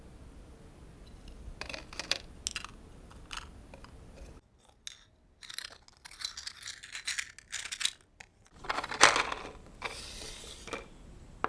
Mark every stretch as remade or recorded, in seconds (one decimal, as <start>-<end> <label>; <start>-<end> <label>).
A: 0.0-11.5 recorded